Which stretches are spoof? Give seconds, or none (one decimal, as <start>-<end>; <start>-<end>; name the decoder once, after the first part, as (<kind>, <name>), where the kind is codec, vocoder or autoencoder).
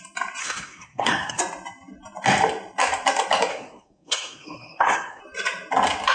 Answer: 0.4-1.4 (codec, SNAC); 3.5-5.2